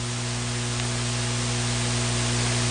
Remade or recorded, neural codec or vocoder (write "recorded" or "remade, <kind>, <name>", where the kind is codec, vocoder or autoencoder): recorded